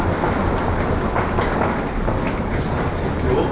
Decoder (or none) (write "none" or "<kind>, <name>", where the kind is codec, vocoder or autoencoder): none